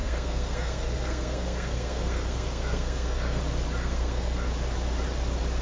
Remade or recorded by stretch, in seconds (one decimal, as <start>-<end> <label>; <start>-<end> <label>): 0.0-3.4 remade; 3.4-3.8 recorded; 3.8-4.5 remade; 4.5-5.6 recorded